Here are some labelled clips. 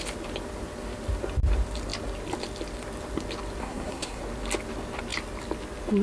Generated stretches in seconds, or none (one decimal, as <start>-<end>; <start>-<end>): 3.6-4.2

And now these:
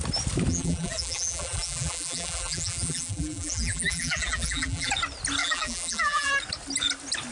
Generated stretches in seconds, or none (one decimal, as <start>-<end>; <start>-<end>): 0.5-4.9; 5.4-6.3

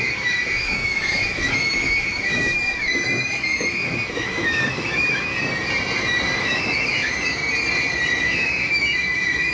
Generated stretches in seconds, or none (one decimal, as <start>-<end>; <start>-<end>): 0.0-5.3; 6.4-7.4; 8.2-9.5